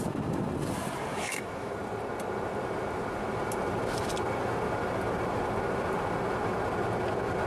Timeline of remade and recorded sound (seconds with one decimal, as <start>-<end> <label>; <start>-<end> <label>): 0.0-1.1 recorded; 1.1-1.7 remade; 1.7-7.5 recorded